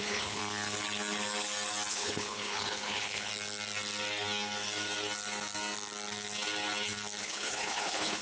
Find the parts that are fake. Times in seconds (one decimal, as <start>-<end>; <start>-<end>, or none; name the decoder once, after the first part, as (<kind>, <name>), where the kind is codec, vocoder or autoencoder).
0.0-0.4 (codec, HILCodec); 1.9-3.3; 7.2-8.2